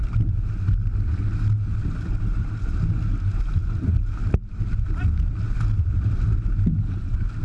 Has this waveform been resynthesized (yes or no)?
no